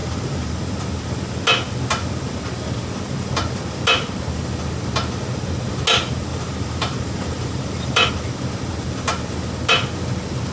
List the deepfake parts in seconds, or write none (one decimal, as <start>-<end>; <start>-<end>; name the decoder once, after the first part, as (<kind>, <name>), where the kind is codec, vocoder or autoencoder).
0.0-0.5 (vocoder, BigVGAN v2); 6.3-8.1